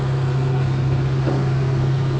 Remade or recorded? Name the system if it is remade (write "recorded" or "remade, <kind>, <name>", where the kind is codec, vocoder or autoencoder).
remade, codec, SNAC